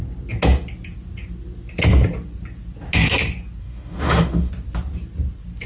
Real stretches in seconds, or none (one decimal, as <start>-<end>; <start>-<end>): 0.0-3.6; 4.5-5.7